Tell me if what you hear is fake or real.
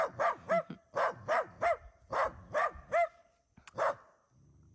real